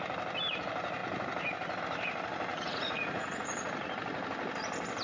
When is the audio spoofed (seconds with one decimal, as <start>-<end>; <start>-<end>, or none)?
2.5-3.7